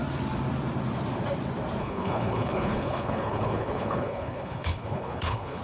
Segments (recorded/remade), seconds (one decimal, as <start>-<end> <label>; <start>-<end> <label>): 0.0-1.8 recorded; 1.8-5.6 remade